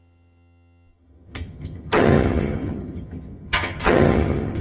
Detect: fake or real fake